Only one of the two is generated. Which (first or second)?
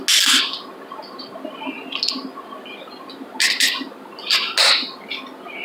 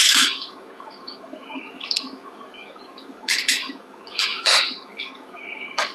second